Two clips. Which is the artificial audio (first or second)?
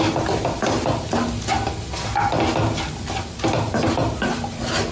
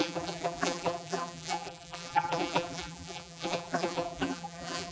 second